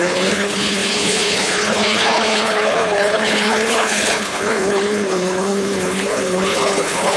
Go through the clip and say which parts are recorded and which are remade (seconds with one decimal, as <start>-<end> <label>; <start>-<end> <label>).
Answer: 0.0-7.2 remade